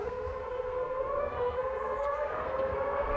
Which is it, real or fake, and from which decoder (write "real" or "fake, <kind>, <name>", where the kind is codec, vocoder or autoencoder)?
fake, codec, SNAC